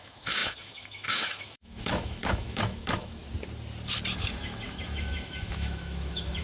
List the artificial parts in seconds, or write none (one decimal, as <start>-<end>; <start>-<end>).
0.0-3.2; 4.3-6.4